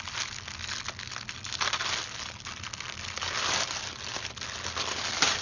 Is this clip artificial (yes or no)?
no